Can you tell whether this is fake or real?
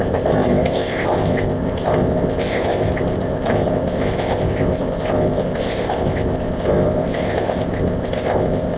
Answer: fake